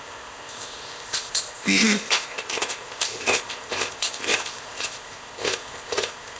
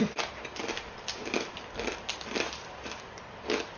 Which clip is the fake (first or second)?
first